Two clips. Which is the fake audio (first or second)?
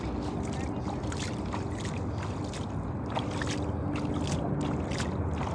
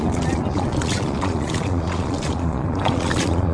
second